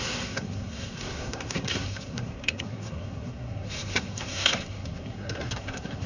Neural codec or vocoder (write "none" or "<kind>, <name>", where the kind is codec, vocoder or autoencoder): codec, SNAC